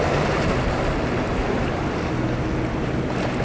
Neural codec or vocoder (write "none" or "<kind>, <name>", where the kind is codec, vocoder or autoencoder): none